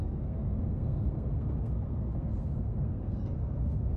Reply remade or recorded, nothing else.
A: remade